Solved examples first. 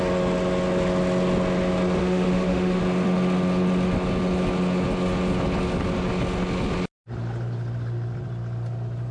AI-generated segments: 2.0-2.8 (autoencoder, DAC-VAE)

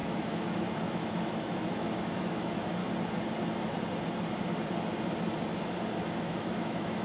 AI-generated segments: 0.0-2.8 (autoencoder, DAC-VAE); 6.2-7.0

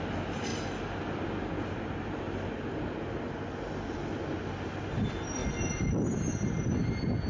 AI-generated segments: none

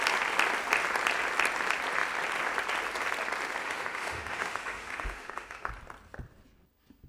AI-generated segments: 3.6-5.7 (autoencoder, DAC-VAE)

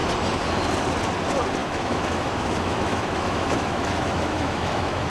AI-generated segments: 1.6-5.1 (autoencoder, DAC-VAE)